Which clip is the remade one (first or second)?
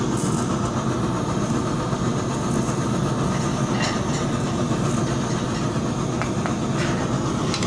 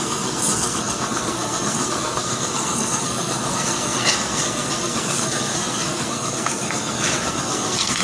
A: second